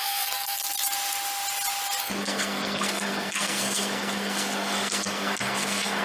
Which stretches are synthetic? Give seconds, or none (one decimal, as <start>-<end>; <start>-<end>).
0.0-0.6; 2.0-6.0